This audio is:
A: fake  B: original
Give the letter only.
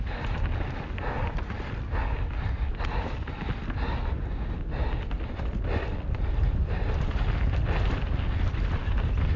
B